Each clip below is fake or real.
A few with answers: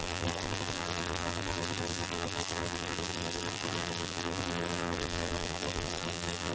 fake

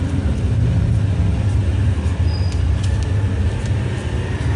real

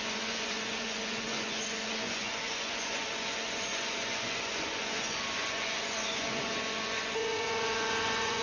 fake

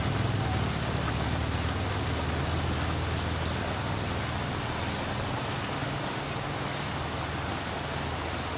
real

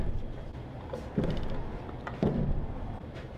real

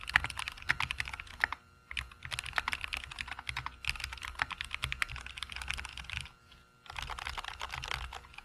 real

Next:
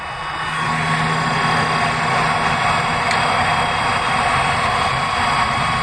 real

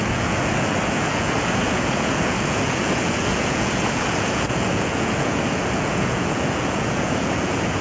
fake